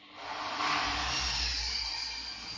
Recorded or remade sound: recorded